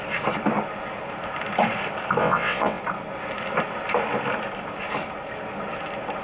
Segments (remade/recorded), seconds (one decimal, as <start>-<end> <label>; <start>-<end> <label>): 0.0-2.2 recorded; 2.2-2.8 remade; 2.8-6.2 recorded